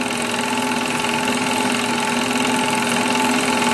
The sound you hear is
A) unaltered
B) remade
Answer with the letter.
A